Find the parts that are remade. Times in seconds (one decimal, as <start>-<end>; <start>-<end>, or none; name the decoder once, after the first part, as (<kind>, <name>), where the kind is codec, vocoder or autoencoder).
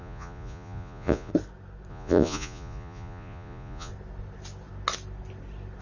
0.0-1.3 (vocoder, Vocos); 1.9-3.9